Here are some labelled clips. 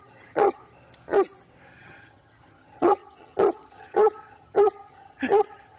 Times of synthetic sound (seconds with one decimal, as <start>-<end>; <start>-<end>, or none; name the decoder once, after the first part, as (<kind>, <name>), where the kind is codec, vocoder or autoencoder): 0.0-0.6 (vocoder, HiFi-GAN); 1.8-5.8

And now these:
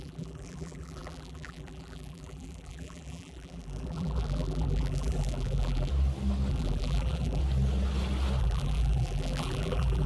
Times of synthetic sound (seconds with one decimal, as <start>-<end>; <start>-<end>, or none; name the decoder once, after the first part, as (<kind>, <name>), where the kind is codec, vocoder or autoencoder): 0.0-5.9 (vocoder, BigVGAN v2); 6.5-7.4; 8.4-10.1

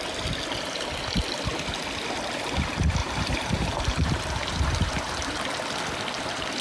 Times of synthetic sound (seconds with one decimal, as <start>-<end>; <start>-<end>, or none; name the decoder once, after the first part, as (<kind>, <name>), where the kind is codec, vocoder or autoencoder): 3.0-5.3 (vocoder, BigVGAN v2)

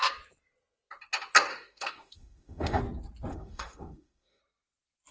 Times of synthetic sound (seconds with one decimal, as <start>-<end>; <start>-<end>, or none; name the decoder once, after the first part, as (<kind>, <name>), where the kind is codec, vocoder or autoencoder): 1.5-2.8 (autoencoder, DAC-VAE); 3.3-4.4

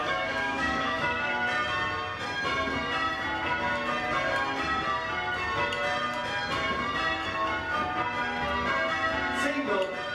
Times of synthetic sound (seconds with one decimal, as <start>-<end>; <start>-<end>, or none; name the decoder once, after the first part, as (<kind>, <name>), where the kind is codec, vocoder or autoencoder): 0.0-1.3 (codec, DAC)

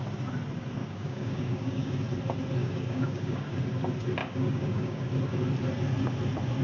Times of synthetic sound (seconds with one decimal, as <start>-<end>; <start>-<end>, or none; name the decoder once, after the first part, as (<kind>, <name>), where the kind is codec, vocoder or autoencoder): 0.8-1.9 (codec, DAC); 2.6-3.6; 4.2-5.1